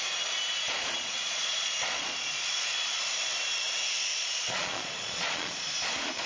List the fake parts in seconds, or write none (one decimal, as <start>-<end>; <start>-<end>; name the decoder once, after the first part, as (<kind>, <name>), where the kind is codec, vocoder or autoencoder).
0.8-3.0 (vocoder, Vocos); 4.1-6.3

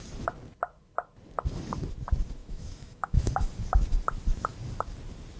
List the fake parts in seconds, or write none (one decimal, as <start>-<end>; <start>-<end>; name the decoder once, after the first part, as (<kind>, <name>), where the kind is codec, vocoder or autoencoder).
2.4-3.3 (autoencoder, DAC-VAE)

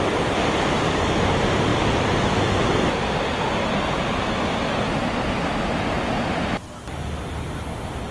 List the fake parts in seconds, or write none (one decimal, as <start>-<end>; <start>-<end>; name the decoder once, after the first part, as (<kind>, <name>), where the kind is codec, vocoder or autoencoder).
none

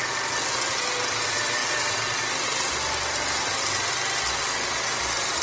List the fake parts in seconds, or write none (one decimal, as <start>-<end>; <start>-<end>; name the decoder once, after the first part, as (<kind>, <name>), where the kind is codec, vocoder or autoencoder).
none

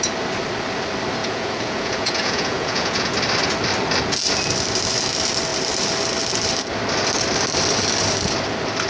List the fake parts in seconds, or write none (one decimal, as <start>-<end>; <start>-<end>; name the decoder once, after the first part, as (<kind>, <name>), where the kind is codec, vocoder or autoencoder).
1.2-3.1 (vocoder, Vocos)